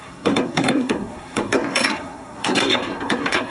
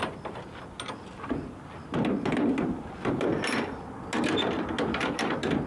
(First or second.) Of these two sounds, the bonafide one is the second